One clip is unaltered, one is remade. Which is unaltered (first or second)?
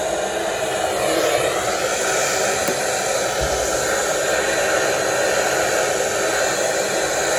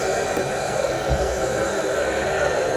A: first